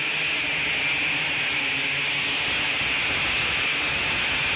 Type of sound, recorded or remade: recorded